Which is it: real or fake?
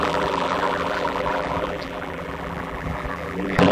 fake